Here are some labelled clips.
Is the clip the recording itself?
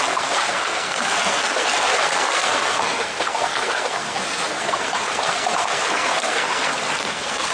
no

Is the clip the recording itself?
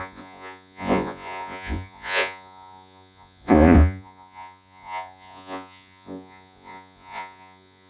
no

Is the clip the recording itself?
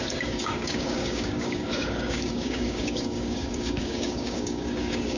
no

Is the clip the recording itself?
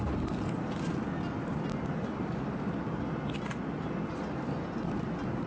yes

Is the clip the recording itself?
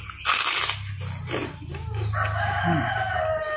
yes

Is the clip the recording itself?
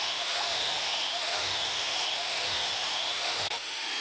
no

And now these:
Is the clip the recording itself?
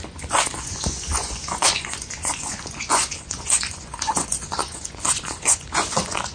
no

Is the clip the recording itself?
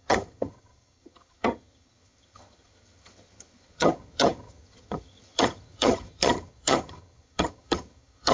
no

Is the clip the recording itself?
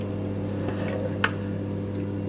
yes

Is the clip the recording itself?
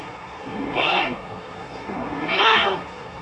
no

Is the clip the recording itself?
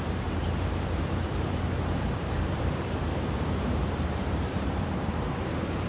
no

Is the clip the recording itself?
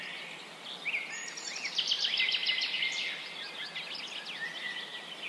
yes